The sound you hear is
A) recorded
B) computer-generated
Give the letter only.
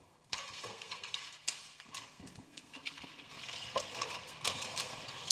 B